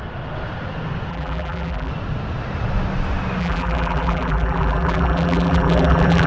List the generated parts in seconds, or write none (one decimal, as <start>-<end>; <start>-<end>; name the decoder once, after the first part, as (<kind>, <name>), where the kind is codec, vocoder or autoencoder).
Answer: 1.1-1.9 (vocoder, BigVGAN v2); 3.4-6.3